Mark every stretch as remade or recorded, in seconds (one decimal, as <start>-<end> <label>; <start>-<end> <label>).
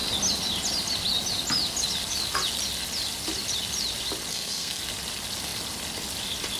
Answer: 0.0-4.3 recorded; 4.3-4.8 remade; 4.8-6.6 recorded